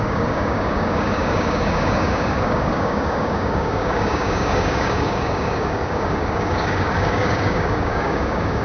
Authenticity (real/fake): fake